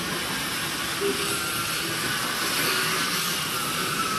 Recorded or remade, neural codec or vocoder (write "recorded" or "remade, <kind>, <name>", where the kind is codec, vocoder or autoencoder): recorded